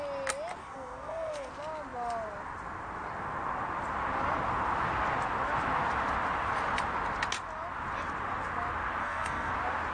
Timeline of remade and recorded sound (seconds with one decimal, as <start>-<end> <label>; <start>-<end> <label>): 0.0-0.6 recorded; 0.6-1.5 remade; 1.5-9.0 recorded; 9.0-9.5 remade; 9.5-9.9 recorded